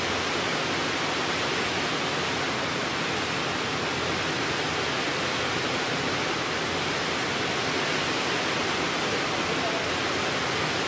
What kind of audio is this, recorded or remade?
recorded